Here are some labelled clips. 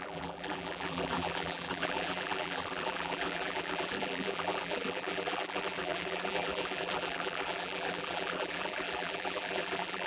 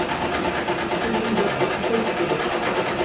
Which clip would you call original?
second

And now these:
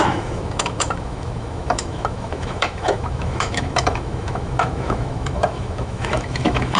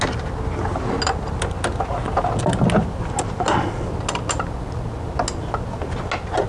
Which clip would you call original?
second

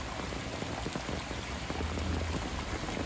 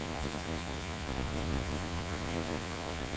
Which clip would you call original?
first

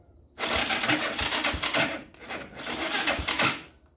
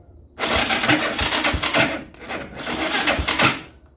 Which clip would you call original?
second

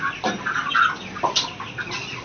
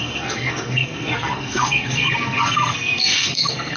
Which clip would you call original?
first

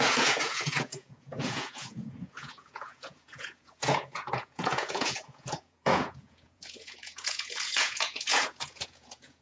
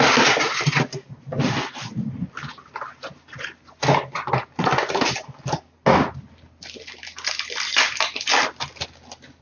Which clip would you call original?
second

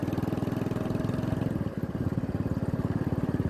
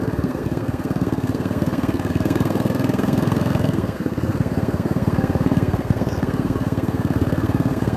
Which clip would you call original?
first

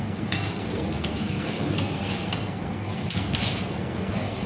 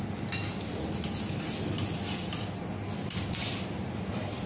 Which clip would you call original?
second